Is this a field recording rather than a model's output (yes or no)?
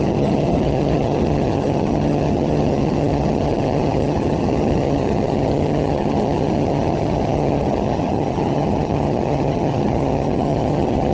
no